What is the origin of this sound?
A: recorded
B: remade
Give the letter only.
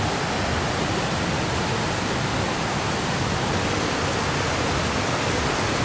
A